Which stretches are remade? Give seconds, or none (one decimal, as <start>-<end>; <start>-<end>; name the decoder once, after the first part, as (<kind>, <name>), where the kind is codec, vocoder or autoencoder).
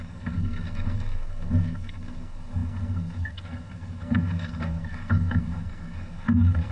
0.0-6.7 (codec, SNAC)